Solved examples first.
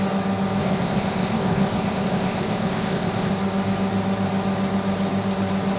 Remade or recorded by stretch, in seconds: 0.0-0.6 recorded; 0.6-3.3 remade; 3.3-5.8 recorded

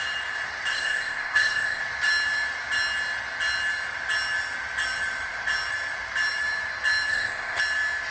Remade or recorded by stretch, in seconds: 0.0-0.7 recorded; 0.7-1.8 remade; 1.8-7.1 recorded; 7.1-7.6 remade; 7.6-8.1 recorded